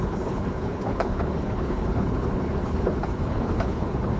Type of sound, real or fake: fake